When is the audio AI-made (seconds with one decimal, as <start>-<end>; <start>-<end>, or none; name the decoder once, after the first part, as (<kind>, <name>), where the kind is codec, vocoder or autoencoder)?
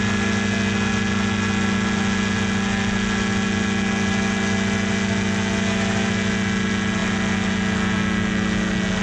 none